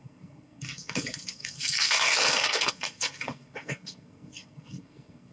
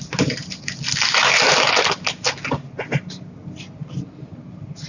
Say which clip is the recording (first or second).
second